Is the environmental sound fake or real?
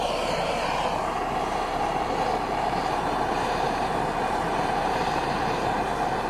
fake